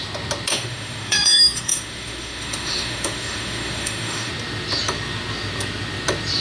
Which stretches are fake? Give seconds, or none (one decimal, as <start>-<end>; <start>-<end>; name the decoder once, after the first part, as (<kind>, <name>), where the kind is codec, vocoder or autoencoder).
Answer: 0.5-4.3 (autoencoder, DAC-VAE)